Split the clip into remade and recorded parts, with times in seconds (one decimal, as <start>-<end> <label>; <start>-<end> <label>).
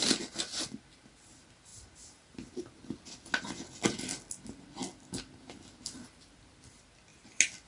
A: 0.0-7.7 recorded